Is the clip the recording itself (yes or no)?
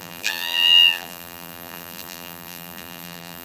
no